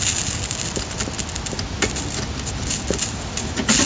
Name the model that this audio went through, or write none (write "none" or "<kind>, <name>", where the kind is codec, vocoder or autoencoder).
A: none